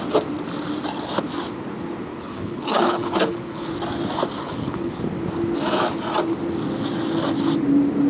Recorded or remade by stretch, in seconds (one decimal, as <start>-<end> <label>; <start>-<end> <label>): 0.0-2.1 recorded; 2.1-3.7 remade; 3.7-4.4 recorded; 4.4-4.9 remade; 4.9-8.1 recorded